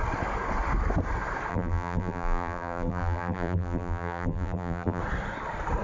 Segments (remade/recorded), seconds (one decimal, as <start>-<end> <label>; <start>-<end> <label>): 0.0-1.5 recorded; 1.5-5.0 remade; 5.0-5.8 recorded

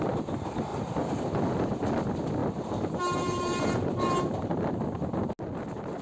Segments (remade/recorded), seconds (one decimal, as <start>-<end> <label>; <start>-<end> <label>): 0.0-2.4 recorded; 2.4-4.8 remade; 4.8-6.0 recorded

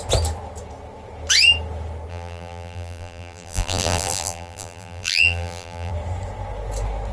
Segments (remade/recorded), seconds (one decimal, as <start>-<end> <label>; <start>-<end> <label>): 0.0-2.1 recorded; 2.1-5.9 remade; 5.9-7.1 recorded

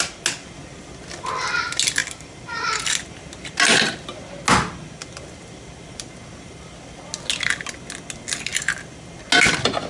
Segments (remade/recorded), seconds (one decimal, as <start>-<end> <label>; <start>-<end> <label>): 0.0-2.0 recorded; 2.0-2.8 remade; 2.8-9.9 recorded